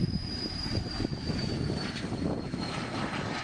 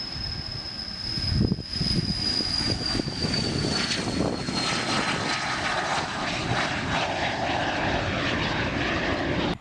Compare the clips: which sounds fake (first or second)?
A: first